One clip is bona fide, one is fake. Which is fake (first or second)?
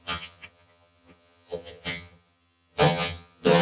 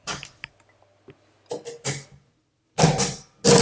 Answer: first